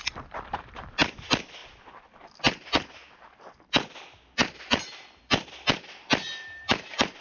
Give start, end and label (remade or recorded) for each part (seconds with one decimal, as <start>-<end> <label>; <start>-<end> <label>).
0.0-1.6 remade; 1.6-5.2 recorded; 5.2-7.2 remade

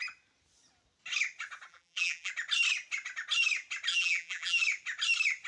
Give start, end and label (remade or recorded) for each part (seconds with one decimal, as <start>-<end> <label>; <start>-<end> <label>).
0.0-1.7 recorded; 1.7-2.3 remade; 2.3-3.9 recorded; 3.9-4.6 remade; 4.6-5.5 recorded

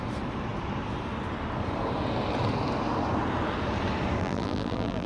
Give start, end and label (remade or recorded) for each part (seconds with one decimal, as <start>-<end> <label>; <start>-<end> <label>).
0.0-4.2 recorded; 4.2-5.1 remade

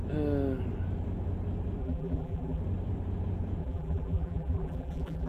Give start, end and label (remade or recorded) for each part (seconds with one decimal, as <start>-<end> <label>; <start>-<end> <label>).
0.0-1.8 recorded; 1.8-2.6 remade; 2.6-3.6 recorded; 3.6-5.3 remade

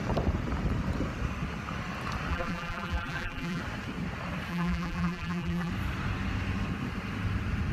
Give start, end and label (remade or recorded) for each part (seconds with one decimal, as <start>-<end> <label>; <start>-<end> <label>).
0.0-2.3 recorded; 2.3-3.6 remade; 3.6-4.5 recorded; 4.5-5.7 remade; 5.7-7.7 recorded

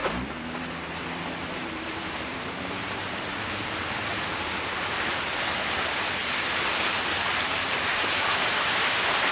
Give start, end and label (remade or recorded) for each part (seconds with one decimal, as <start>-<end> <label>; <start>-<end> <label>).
0.0-3.7 remade; 3.7-6.2 recorded; 6.2-9.3 remade